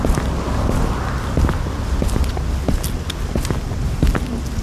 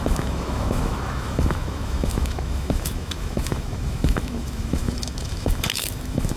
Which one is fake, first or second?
second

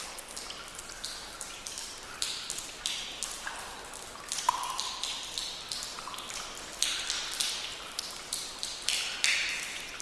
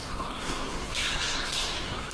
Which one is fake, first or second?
second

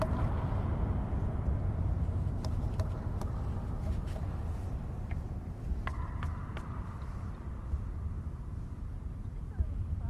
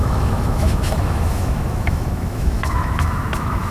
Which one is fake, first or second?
second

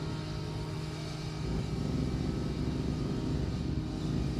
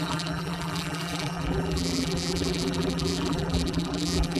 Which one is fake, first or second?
second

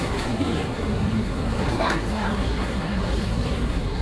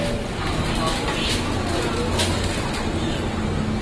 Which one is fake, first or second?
first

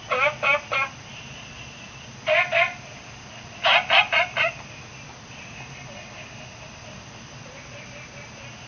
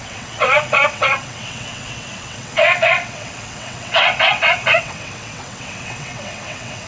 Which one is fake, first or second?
second